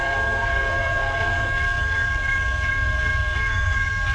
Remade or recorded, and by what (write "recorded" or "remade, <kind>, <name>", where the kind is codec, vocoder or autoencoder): remade, codec, SNAC